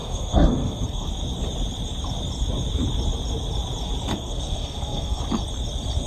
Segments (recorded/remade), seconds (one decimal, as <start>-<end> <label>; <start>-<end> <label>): 0.0-1.1 remade; 1.1-4.1 recorded; 4.1-5.2 remade; 5.2-6.1 recorded